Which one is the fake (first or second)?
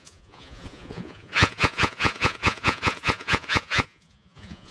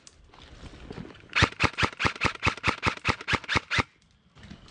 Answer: first